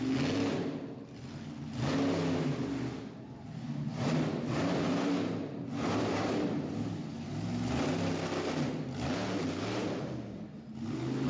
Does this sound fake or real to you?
real